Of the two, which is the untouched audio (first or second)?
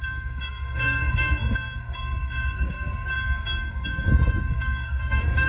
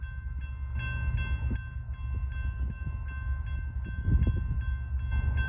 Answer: second